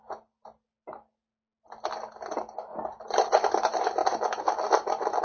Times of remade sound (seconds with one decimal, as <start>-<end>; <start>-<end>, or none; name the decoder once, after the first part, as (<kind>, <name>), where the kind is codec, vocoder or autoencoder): none